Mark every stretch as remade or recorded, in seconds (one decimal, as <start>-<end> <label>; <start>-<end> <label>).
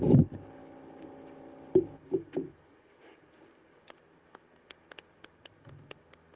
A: 0.0-6.4 recorded